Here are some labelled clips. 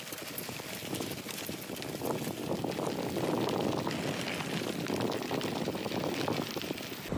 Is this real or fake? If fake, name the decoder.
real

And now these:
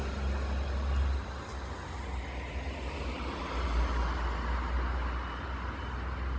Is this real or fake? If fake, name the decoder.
real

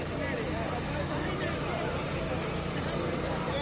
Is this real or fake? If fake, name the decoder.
real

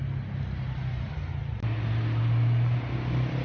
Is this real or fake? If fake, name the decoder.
real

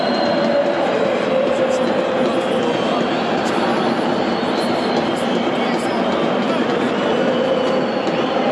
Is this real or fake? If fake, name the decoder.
real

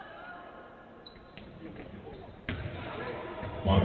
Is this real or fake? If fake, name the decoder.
fake, vocoder, BigVGAN v2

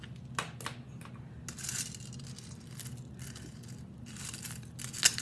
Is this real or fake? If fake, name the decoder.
real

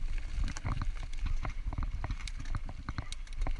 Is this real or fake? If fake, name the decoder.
real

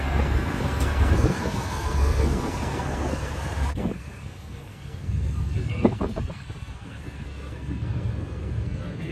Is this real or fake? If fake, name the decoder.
fake, codec, SNAC